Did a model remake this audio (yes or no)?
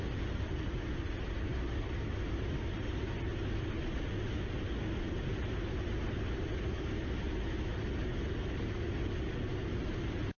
no